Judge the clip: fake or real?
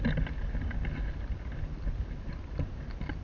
real